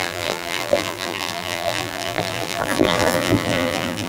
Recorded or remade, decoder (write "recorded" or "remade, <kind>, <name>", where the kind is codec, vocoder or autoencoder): remade, vocoder, BigVGAN v2